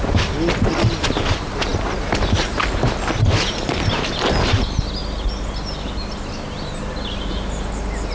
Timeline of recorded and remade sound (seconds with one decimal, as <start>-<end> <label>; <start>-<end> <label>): 0.0-8.1 recorded